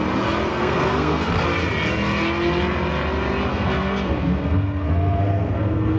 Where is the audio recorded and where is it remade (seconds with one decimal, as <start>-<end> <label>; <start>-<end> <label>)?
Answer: 0.0-0.5 recorded; 0.5-1.3 remade; 1.3-3.5 recorded; 3.5-6.0 remade